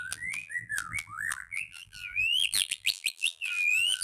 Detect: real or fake fake